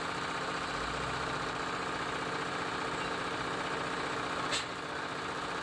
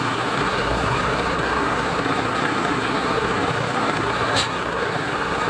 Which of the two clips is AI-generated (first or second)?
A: second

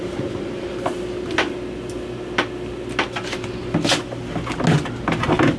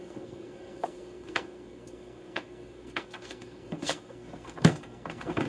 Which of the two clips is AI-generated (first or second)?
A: second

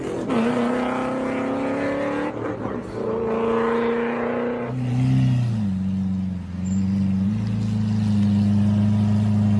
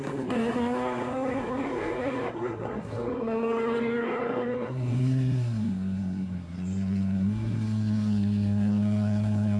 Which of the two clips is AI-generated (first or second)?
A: second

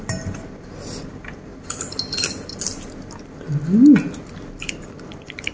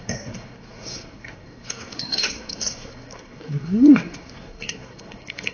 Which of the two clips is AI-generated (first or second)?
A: second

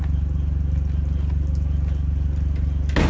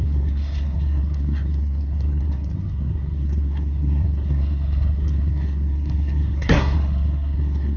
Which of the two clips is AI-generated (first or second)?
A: second